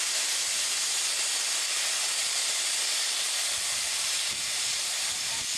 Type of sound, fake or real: fake